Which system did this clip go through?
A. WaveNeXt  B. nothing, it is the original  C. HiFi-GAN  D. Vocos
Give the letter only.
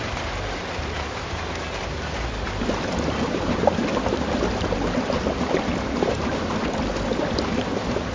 B